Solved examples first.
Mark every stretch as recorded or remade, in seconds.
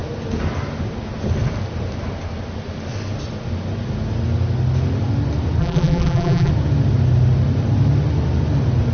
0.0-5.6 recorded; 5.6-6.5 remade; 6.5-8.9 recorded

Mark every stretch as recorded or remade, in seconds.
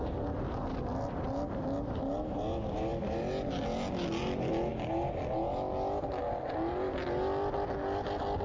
0.0-8.4 recorded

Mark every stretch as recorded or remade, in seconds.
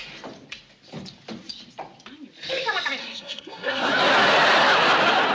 0.0-3.0 recorded; 3.0-3.9 remade; 3.9-5.3 recorded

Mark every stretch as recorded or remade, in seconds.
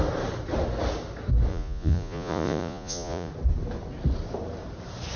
0.0-1.5 recorded; 1.5-3.3 remade; 3.3-5.2 recorded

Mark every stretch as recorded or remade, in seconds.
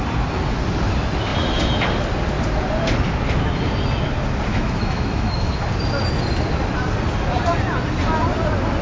0.0-4.5 recorded; 4.5-5.6 remade; 5.6-8.8 recorded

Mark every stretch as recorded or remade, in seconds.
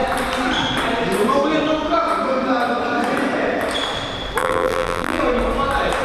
0.0-4.4 recorded; 4.4-5.2 remade; 5.2-6.0 recorded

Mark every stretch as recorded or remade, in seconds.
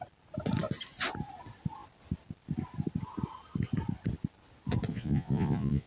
0.0-4.9 recorded; 4.9-5.9 remade